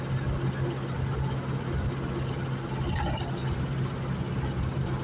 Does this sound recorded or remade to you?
recorded